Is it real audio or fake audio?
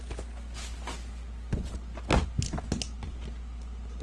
real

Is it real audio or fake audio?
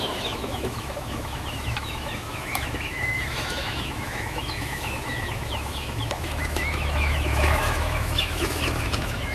fake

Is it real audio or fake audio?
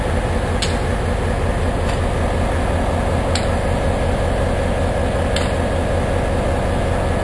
real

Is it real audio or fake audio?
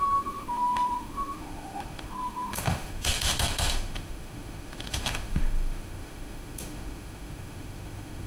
fake